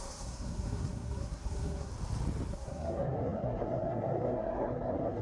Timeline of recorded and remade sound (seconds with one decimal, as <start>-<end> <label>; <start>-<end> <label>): 0.0-1.9 remade; 1.9-2.5 recorded; 2.5-5.2 remade